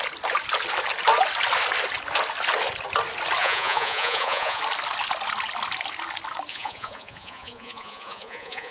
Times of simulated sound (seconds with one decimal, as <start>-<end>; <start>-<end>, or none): 3.4-4.6; 6.5-8.7

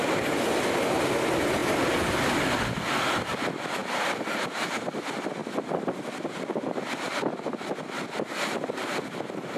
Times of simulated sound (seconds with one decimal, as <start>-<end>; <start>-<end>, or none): none

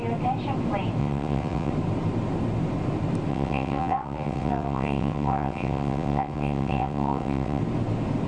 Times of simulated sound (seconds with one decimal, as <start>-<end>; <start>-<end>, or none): 1.0-1.7; 3.3-7.6

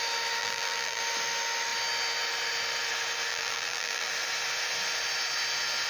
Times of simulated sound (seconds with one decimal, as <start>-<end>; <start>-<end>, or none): 0.4-1.0; 3.3-4.1

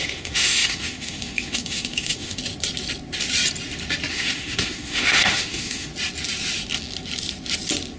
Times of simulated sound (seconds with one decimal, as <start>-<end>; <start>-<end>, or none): 0.0-2.4; 4.1-5.9

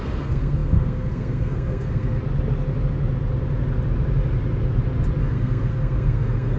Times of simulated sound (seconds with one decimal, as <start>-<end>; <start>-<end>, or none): 0.0-2.2; 5.2-6.6

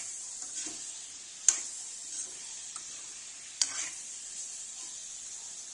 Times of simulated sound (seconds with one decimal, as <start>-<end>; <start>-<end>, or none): 2.0-4.8